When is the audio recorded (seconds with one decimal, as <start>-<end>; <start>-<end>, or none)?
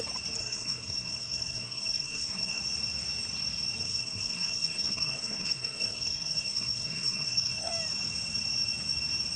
0.0-0.4; 2.6-3.8; 7.7-9.4